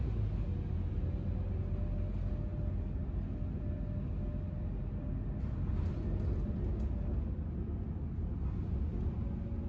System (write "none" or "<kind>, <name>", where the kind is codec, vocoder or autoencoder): none